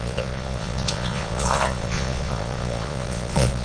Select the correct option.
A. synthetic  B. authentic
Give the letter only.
A